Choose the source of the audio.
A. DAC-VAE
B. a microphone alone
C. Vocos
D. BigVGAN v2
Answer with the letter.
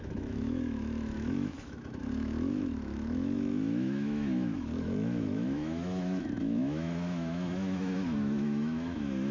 A